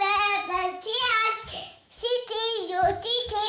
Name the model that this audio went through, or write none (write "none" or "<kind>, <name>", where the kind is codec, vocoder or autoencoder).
autoencoder, DAC-VAE